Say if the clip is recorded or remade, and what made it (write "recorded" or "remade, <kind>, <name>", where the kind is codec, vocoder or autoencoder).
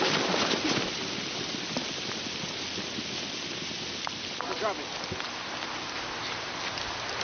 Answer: recorded